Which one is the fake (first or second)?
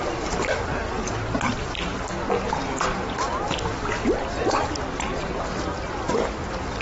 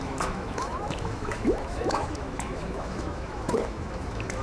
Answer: second